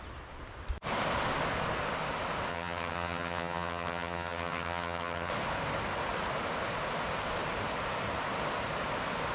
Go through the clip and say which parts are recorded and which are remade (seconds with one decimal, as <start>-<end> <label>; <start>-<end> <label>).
0.0-2.5 recorded; 2.5-5.3 remade; 5.3-9.3 recorded